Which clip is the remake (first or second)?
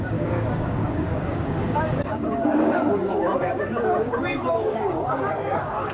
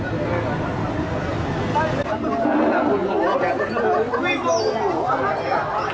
first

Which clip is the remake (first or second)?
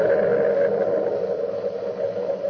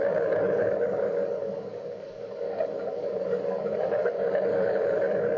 second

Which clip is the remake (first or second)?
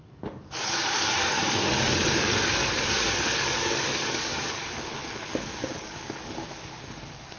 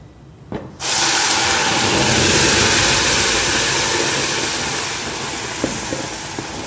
first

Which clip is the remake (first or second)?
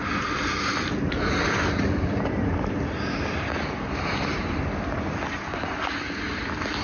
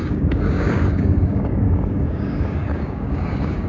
second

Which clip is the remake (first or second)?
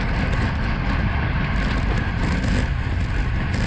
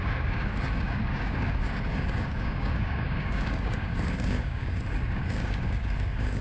second